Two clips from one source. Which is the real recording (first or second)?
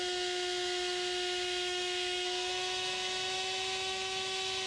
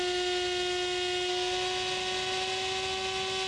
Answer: second